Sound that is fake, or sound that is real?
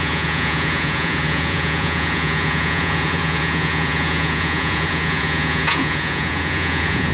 fake